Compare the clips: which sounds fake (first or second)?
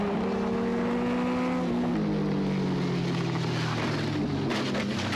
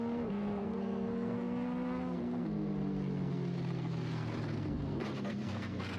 second